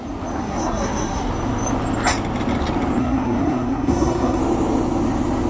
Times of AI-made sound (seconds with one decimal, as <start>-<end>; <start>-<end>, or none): 0.4-1.3; 3.0-4.4